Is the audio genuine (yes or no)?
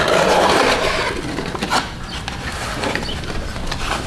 yes